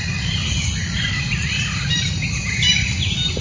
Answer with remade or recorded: remade